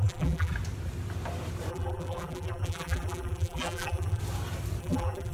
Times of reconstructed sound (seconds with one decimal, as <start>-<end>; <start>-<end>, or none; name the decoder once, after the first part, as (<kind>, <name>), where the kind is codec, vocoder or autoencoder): 0.0-0.5 (vocoder, BigVGAN v2); 1.7-4.2; 4.8-5.3